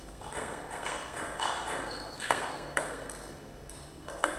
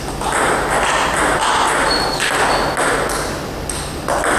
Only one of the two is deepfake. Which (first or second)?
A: first